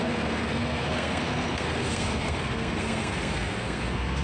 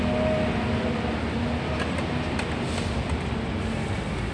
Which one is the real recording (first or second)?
second